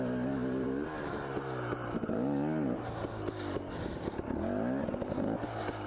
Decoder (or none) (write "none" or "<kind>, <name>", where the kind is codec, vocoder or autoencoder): none